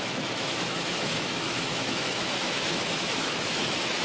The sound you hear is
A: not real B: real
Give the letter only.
A